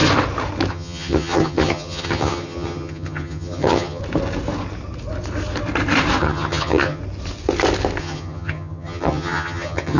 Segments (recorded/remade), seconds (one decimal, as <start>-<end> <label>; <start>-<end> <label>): 0.0-0.7 recorded; 0.7-4.0 remade; 4.0-6.2 recorded; 6.2-7.0 remade; 7.0-8.0 recorded; 8.0-10.0 remade